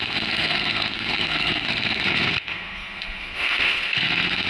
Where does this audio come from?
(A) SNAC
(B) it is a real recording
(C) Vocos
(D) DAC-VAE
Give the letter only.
A